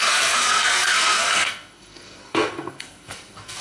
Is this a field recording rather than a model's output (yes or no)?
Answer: no